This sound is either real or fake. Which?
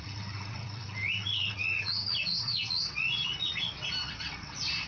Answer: fake